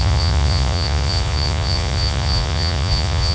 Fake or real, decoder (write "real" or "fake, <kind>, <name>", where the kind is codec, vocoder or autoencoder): fake, vocoder, Vocos